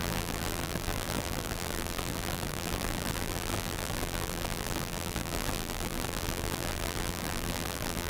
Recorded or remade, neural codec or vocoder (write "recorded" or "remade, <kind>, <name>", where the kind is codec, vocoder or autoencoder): remade, vocoder, BigVGAN v2